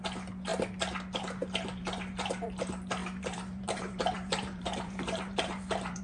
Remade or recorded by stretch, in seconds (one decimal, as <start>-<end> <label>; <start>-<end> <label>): 0.0-1.8 recorded; 1.8-2.4 remade; 2.4-3.0 recorded; 3.0-6.0 remade